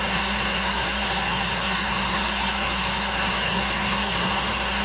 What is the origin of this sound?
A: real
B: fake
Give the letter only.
B